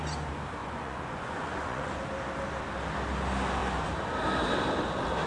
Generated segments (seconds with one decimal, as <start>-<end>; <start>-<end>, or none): 0.6-2.0